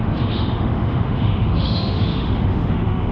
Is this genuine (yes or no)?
no